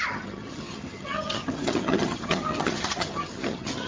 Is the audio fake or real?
fake